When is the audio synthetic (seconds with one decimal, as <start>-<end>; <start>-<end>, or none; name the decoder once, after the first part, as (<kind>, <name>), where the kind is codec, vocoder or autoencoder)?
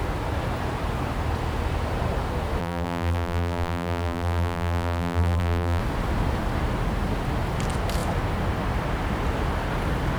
2.6-5.8 (vocoder, BigVGAN v2)